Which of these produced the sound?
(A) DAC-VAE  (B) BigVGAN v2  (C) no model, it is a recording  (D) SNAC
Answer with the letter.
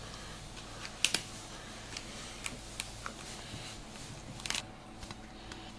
C